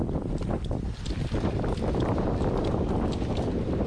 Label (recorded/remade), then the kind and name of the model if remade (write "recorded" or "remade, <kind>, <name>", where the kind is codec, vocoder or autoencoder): recorded